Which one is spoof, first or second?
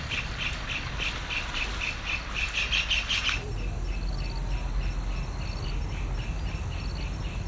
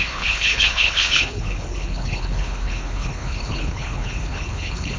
second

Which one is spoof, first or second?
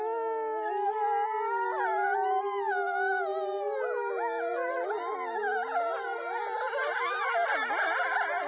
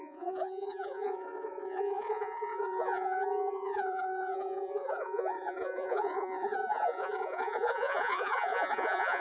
second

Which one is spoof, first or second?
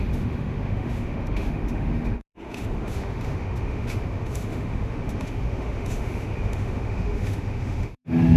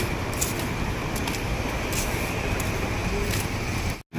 first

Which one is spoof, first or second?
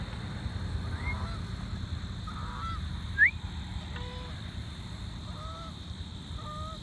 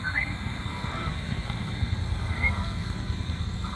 second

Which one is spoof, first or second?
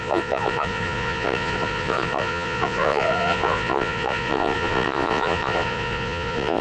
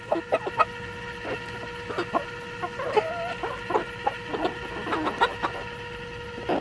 first